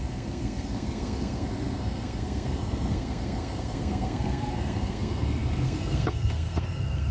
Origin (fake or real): fake